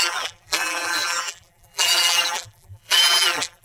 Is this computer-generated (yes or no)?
yes